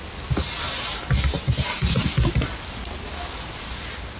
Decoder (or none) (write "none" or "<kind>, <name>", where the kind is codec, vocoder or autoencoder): none